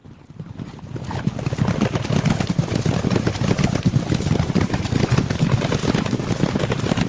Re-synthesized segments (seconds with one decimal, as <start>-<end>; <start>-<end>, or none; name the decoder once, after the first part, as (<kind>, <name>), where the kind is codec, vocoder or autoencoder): none